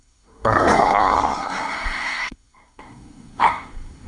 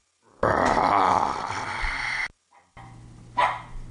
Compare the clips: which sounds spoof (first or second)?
first